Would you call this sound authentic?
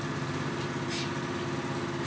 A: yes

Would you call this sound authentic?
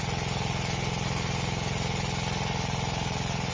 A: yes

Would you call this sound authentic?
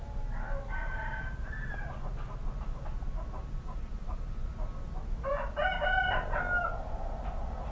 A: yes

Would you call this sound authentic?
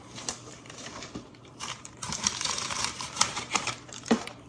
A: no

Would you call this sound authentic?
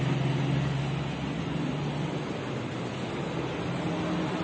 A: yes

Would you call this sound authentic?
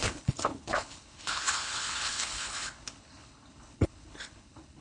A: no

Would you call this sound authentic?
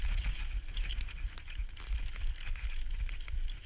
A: yes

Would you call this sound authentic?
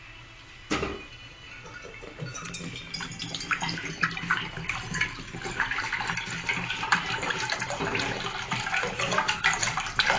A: yes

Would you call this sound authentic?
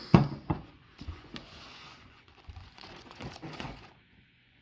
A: no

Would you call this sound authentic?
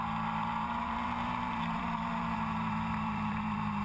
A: no